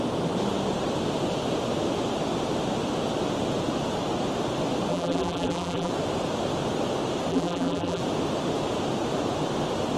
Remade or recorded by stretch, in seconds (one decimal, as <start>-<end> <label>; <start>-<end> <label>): 0.0-4.9 recorded; 4.9-5.9 remade; 5.9-7.3 recorded; 7.3-8.0 remade; 8.0-10.0 recorded